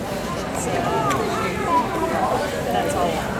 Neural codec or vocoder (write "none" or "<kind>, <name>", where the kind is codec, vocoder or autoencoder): none